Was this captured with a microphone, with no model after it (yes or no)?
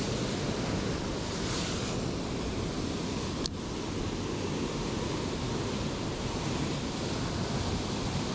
yes